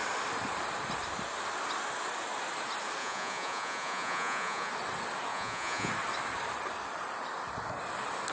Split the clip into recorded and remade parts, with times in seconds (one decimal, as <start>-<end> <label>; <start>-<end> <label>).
0.0-3.0 recorded; 3.0-4.7 remade; 4.7-5.3 recorded; 5.3-5.9 remade; 5.9-8.3 recorded